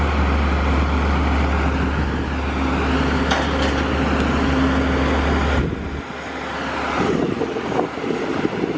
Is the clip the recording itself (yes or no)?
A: yes